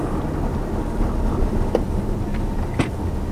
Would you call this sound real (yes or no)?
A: yes